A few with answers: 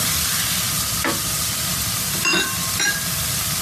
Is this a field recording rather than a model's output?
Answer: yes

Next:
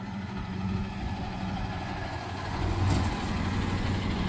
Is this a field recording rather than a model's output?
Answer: no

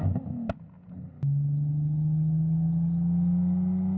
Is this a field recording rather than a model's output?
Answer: yes